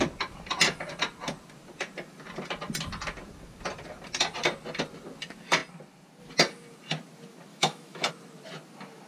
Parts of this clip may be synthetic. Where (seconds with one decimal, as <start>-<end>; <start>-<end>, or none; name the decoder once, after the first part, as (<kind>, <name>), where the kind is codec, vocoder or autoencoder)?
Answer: 7.5-8.1 (autoencoder, DAC-VAE)